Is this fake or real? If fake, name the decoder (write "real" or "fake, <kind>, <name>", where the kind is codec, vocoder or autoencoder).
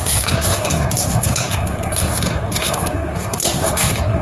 fake, codec, SNAC